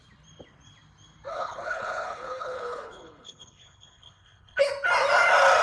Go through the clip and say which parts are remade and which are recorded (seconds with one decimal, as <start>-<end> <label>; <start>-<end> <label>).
0.0-1.3 recorded; 1.3-4.7 remade; 4.7-5.6 recorded